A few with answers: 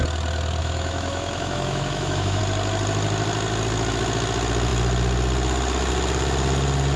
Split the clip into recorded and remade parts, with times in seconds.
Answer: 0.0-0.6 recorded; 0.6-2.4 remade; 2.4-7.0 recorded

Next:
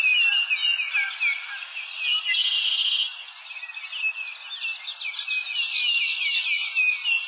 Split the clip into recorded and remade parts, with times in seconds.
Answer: 0.0-7.3 recorded

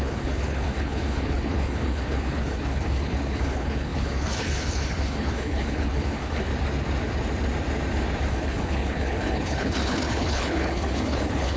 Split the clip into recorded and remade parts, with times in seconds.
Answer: 0.0-6.5 remade; 6.5-8.3 recorded; 8.3-11.6 remade

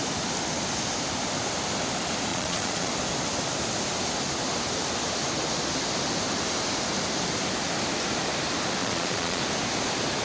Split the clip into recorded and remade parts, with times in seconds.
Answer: 0.0-2.3 recorded; 2.3-2.9 remade; 2.9-8.8 recorded; 8.8-9.4 remade; 9.4-10.2 recorded

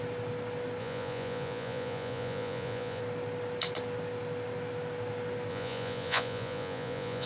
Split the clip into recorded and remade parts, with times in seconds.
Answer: 0.0-0.8 recorded; 0.8-3.0 remade; 3.0-5.5 recorded; 5.5-7.3 remade